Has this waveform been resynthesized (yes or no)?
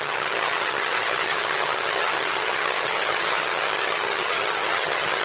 yes